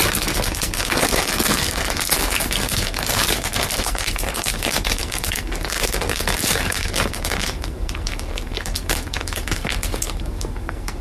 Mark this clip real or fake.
fake